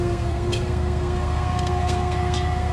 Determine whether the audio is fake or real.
fake